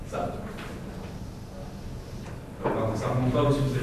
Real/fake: real